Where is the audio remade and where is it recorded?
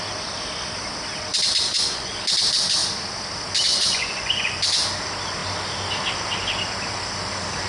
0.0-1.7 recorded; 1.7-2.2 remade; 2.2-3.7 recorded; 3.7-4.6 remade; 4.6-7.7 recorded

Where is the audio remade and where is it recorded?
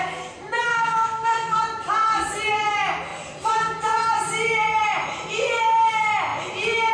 0.0-0.7 recorded; 0.7-1.6 remade; 1.6-6.9 recorded